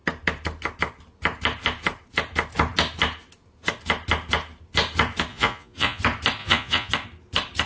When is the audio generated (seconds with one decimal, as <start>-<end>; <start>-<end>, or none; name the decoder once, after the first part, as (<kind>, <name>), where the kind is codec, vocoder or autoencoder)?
5.3-6.0 (vocoder, Vocos); 6.4-6.9